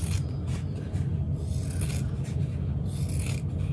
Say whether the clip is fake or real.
real